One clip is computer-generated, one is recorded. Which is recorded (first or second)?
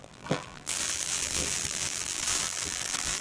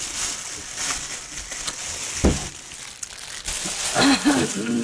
second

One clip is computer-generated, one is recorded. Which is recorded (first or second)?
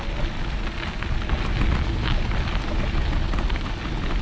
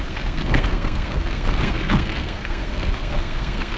first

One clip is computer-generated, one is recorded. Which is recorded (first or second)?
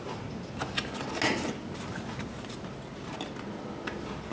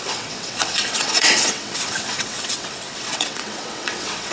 first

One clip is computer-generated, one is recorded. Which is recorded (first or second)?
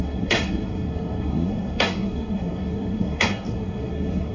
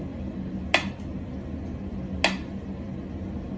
second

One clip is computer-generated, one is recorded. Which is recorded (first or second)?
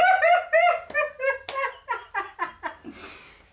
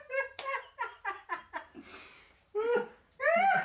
first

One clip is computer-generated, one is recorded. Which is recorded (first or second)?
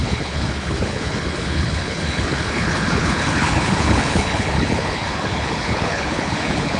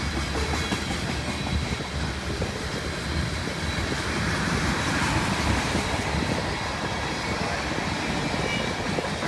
second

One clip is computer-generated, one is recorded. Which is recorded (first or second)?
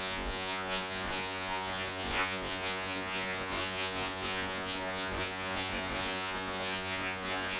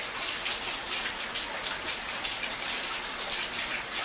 second